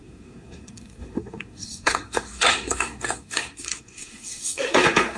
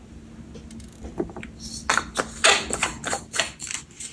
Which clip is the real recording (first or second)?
second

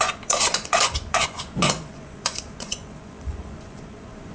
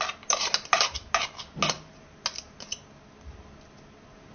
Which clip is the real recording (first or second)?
second